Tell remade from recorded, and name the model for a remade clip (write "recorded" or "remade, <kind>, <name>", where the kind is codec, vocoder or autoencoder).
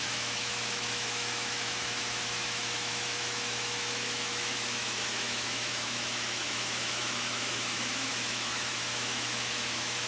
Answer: remade, autoencoder, DAC-VAE